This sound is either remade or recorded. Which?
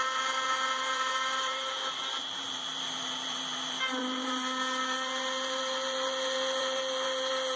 remade